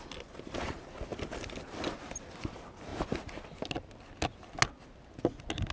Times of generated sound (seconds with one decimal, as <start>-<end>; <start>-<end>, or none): none